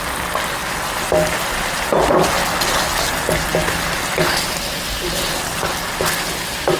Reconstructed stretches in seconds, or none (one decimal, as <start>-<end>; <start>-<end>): none